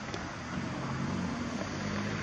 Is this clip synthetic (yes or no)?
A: no